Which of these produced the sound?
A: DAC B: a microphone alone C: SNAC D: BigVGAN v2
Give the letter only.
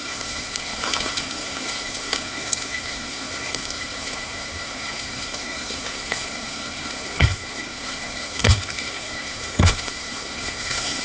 C